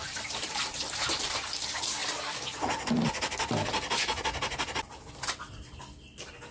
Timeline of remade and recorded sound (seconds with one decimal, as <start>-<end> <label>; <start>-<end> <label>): 0.0-1.3 remade; 1.3-6.5 recorded